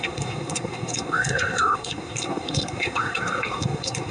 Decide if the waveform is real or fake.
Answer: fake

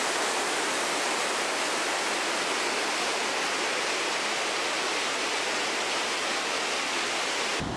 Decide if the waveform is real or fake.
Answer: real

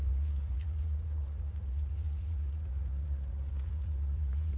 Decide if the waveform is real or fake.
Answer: fake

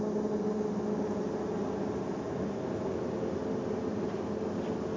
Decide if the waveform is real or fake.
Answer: real